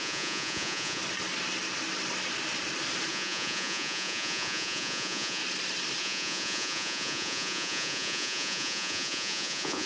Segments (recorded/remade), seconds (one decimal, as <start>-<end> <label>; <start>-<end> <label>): 0.0-1.0 remade; 1.0-3.1 recorded; 3.1-5.4 remade; 5.4-6.0 recorded; 6.0-9.9 remade